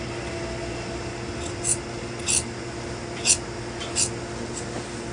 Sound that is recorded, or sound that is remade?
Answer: recorded